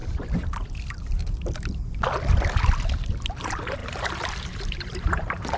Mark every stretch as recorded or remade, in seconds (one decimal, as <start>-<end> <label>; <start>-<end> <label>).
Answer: 0.0-3.3 recorded; 3.3-3.8 remade; 3.8-4.4 recorded; 4.4-5.6 remade